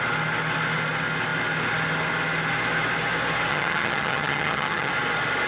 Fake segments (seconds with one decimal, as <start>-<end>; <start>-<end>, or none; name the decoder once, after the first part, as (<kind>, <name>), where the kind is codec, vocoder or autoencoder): 3.5-4.9 (vocoder, HiFi-GAN)